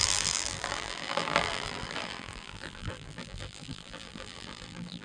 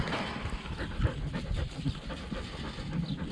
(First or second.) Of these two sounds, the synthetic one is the first